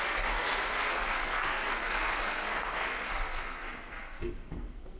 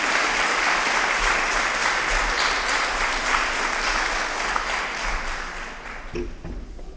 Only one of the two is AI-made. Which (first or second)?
first